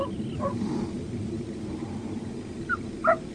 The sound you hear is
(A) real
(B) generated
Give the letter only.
A